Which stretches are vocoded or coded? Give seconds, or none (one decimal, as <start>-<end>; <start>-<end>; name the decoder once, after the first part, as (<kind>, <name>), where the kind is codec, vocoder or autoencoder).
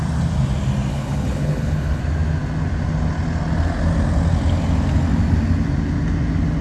0.9-2.0 (codec, HILCodec)